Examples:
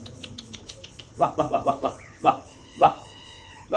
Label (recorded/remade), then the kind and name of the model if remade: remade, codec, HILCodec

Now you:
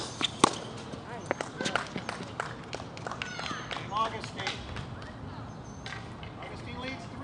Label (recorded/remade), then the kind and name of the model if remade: recorded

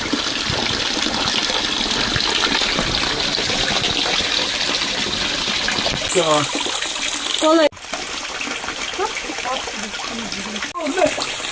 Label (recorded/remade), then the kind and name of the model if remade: recorded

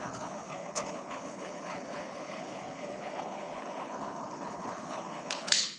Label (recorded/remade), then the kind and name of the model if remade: remade, codec, HILCodec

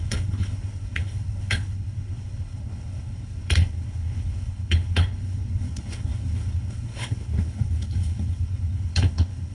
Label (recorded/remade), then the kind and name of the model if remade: remade, codec, HILCodec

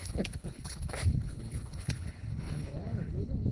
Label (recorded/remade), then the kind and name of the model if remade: remade, codec, HILCodec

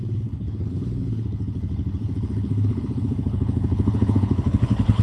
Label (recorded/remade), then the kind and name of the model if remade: remade, codec, HILCodec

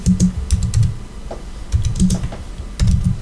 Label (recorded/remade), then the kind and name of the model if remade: recorded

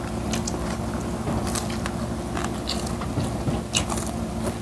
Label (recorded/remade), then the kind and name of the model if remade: recorded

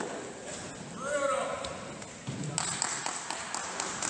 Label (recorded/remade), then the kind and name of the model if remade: recorded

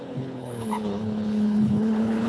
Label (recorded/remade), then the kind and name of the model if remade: remade, codec, HILCodec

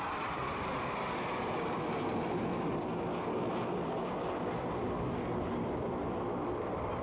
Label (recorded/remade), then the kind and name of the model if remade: recorded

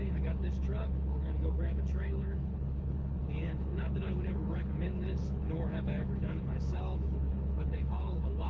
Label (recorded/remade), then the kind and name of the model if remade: remade, codec, HILCodec